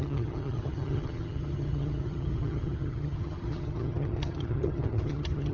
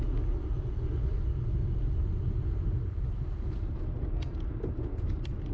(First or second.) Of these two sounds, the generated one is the first